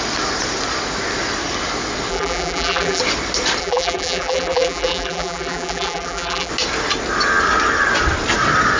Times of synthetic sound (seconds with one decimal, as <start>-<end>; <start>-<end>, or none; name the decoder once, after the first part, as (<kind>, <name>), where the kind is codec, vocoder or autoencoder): 2.1-3.0 (vocoder, BigVGAN v2); 3.6-6.5